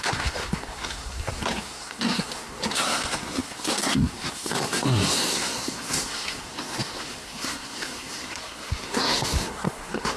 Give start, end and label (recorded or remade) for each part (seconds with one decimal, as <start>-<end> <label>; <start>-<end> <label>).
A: 0.0-10.2 remade